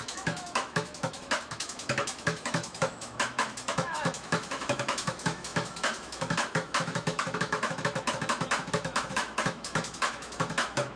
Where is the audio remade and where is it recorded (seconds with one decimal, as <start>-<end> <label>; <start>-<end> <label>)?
0.0-11.0 remade